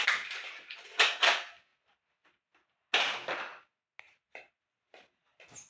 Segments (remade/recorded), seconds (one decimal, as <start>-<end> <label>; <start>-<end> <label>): 0.0-5.7 recorded